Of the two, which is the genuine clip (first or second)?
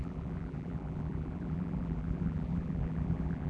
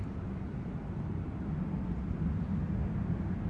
second